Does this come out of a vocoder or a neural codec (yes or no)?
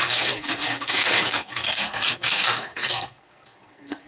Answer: yes